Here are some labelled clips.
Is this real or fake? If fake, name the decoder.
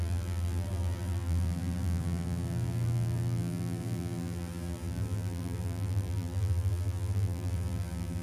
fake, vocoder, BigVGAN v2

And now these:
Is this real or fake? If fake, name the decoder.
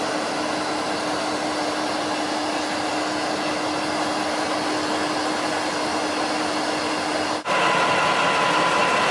real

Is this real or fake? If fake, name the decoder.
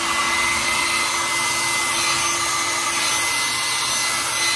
real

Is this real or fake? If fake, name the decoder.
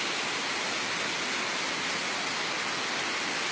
real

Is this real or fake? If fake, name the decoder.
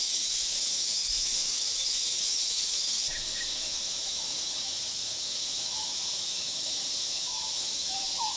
fake, autoencoder, DAC-VAE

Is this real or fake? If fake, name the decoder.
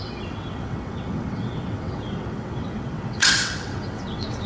fake, vocoder, WaveNeXt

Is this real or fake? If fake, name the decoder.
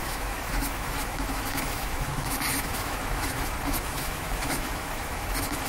fake, autoencoder, DAC-VAE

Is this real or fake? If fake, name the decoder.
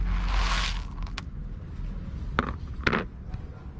real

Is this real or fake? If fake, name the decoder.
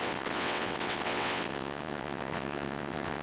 fake, vocoder, WaveNeXt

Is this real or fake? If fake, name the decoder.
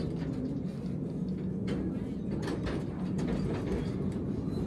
real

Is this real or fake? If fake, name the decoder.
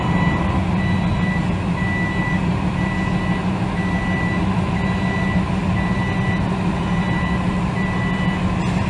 real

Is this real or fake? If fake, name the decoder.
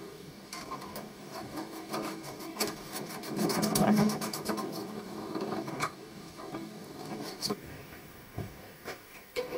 fake, codec, DAC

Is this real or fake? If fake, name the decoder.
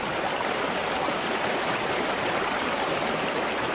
fake, vocoder, BigVGAN v2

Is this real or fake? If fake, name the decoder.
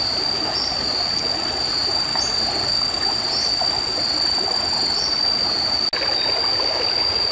real